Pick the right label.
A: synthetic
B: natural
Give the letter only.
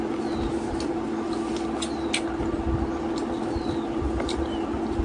B